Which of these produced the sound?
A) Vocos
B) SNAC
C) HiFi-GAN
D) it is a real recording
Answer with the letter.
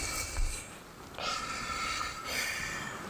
D